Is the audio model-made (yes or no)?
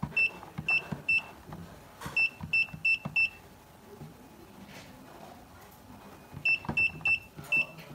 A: no